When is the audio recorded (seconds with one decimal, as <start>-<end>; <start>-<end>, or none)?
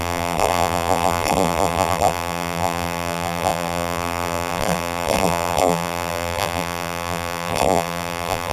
none